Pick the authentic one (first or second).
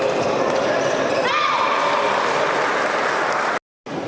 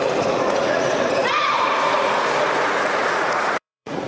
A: first